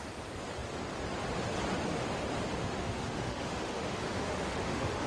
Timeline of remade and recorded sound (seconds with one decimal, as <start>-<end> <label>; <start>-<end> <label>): 0.0-2.6 recorded; 2.6-5.1 remade